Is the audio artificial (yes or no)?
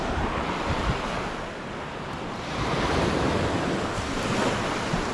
no